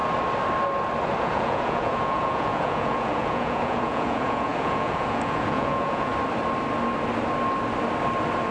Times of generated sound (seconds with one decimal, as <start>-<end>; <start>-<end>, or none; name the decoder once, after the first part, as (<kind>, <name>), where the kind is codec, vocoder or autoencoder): 1.2-6.1 (vocoder, Vocos)